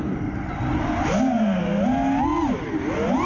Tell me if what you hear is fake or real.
real